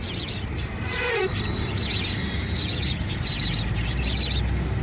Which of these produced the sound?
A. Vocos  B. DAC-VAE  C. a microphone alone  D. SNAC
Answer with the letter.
C